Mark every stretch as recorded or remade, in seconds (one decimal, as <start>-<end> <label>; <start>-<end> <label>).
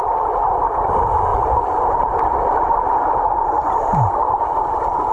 0.0-5.1 recorded